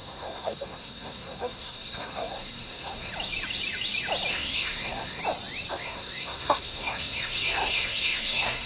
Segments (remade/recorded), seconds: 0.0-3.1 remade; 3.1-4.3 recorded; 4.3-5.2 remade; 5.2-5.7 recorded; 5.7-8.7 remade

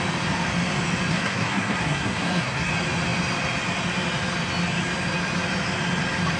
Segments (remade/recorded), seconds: 0.0-1.1 recorded; 1.1-2.7 remade; 2.7-6.4 recorded

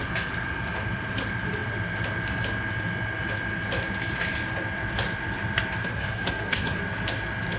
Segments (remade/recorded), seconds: 0.0-5.8 recorded; 5.8-6.8 remade; 6.8-7.6 recorded

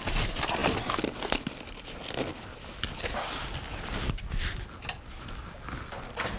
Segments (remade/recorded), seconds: 0.0-6.4 recorded